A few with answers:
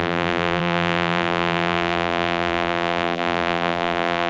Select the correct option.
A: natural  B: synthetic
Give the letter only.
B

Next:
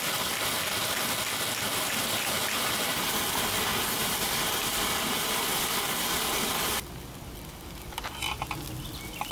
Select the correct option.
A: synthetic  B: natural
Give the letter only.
B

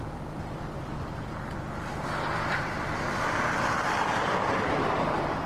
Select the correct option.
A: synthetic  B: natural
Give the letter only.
A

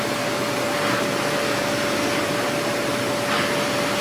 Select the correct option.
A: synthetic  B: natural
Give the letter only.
B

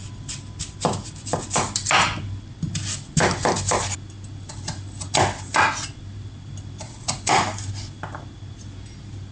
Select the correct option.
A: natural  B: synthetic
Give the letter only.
B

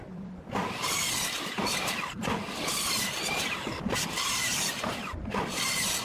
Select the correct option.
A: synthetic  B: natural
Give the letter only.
A